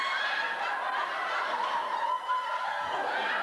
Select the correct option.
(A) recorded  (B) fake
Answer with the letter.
A